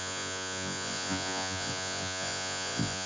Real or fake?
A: fake